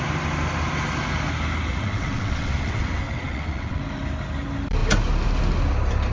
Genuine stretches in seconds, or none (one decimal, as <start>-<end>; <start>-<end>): 0.0-1.7; 3.8-6.1